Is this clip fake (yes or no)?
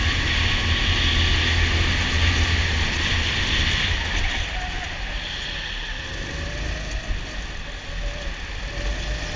no